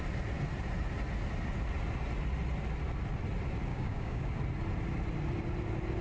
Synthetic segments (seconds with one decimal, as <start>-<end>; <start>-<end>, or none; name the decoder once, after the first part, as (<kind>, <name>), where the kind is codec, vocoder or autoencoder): 3.7-4.3 (codec, DAC)

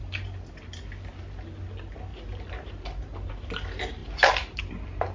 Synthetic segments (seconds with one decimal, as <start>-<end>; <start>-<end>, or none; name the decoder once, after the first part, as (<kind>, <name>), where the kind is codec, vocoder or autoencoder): none

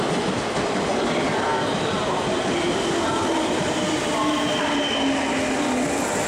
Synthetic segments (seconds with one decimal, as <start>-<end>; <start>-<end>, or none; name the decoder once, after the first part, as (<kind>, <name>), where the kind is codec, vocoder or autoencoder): none